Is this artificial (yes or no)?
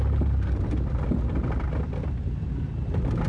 no